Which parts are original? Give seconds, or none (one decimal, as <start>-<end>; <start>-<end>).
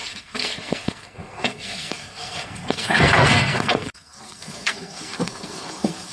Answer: none